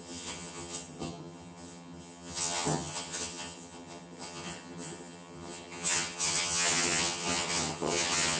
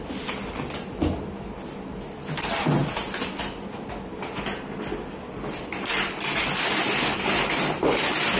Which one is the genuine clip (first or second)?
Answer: second